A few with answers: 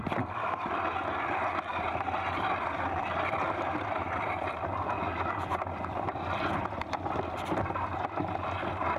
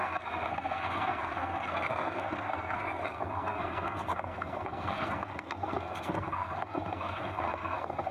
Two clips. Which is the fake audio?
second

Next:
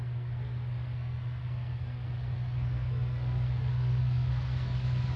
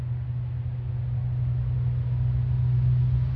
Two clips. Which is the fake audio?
first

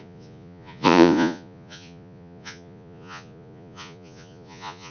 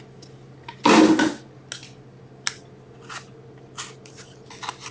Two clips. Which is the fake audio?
first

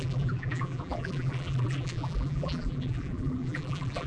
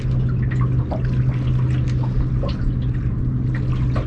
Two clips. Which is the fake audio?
first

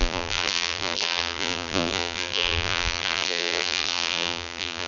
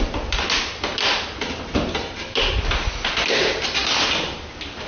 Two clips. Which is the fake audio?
first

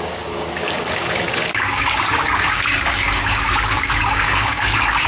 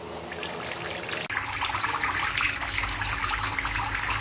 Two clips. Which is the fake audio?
first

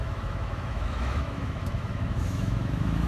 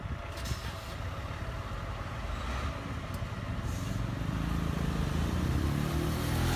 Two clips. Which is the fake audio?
first